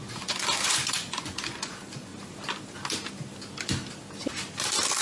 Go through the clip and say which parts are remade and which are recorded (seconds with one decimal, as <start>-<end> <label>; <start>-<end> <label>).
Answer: 0.0-2.1 remade; 2.1-5.0 recorded